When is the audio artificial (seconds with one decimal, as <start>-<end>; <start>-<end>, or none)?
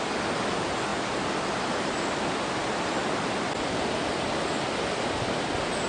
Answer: none